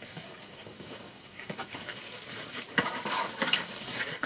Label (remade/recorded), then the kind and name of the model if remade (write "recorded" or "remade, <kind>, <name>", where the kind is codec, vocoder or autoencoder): remade, codec, DAC